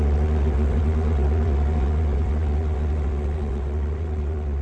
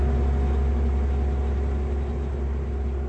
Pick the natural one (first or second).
second